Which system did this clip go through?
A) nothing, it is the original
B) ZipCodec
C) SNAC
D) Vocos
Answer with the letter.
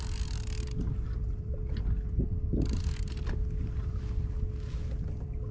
A